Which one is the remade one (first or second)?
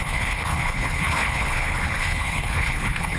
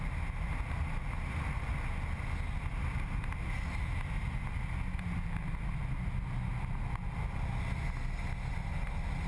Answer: first